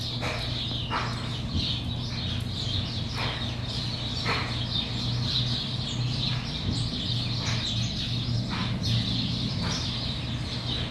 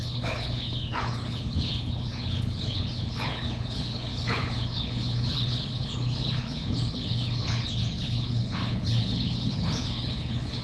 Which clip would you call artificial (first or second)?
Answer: second